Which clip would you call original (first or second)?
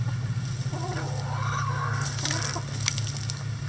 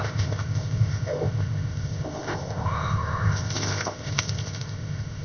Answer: first